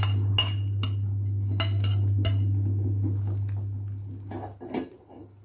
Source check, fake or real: real